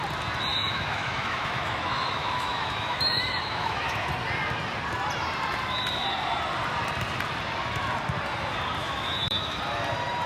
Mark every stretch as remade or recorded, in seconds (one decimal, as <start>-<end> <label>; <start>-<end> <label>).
0.0-0.5 recorded; 0.5-4.1 remade; 4.1-8.8 recorded; 8.8-9.6 remade; 9.6-10.3 recorded